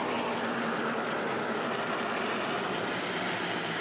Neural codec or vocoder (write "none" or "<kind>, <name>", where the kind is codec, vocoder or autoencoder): none